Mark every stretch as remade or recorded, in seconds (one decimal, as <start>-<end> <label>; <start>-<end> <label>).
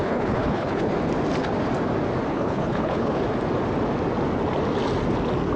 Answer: 0.0-0.9 remade; 0.9-2.3 recorded; 2.3-3.2 remade; 3.2-5.6 recorded